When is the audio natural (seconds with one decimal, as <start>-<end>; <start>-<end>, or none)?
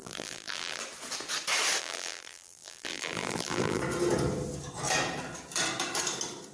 0.8-1.8; 3.8-6.5